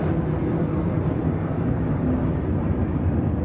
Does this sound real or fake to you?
real